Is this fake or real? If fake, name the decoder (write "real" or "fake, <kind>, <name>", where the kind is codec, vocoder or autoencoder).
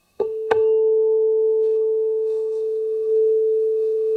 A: fake, codec, SNAC